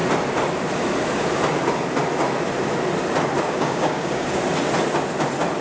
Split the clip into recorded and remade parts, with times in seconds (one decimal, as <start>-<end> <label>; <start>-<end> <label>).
0.0-3.4 recorded; 3.4-4.4 remade; 4.4-5.6 recorded